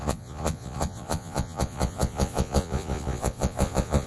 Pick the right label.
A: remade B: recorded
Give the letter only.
A